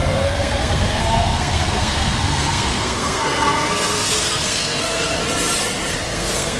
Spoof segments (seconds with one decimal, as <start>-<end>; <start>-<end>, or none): 0.0-5.2; 5.9-6.6

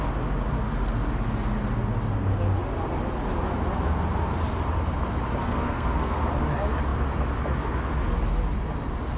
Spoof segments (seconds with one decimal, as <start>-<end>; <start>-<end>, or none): 5.4-6.3

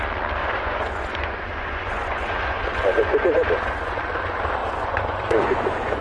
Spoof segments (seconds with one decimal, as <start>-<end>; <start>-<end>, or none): 0.4-4.0; 4.6-6.0

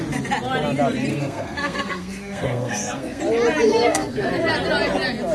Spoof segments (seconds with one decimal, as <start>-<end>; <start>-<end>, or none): 1.1-3.2; 3.7-4.3

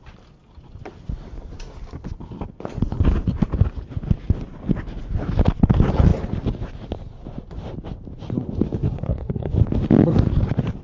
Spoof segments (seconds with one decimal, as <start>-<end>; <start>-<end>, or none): 8.8-9.5